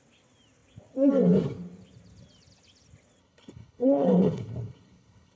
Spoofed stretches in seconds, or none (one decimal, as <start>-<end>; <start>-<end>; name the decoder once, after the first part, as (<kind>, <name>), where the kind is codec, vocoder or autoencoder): 3.2-5.4 (codec, HILCodec)